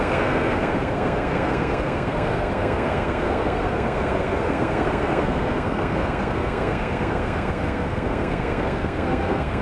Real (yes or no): no